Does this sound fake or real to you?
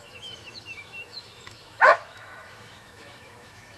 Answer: fake